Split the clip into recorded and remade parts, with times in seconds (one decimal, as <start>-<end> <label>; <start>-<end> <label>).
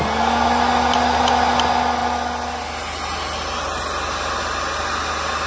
0.0-5.5 recorded